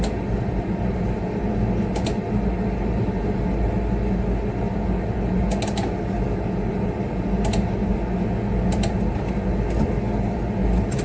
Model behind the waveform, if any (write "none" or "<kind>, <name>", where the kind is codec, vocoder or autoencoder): none